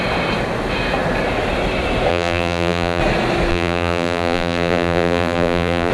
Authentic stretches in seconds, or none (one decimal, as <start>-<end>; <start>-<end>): 0.0-2.1; 3.0-3.5